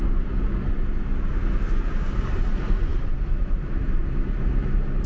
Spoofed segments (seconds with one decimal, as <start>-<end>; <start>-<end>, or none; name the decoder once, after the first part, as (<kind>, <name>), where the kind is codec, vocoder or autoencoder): 2.9-4.1 (vocoder, BigVGAN v2)